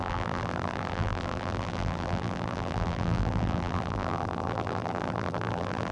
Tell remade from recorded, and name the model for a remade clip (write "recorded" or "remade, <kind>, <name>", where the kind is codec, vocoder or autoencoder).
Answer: remade, vocoder, BigVGAN v2